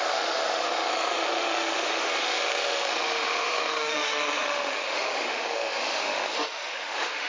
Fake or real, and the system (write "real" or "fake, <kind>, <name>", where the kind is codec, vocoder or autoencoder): fake, autoencoder, DAC-VAE